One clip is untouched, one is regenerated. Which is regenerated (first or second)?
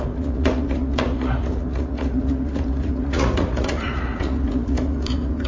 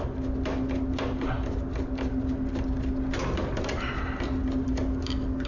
first